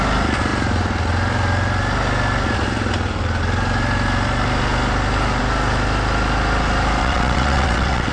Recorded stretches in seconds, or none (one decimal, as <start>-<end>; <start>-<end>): 0.0-7.0